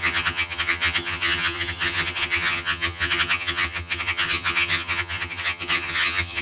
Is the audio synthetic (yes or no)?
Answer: yes